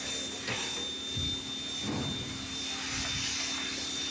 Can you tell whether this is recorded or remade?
recorded